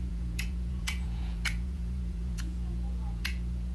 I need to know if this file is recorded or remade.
remade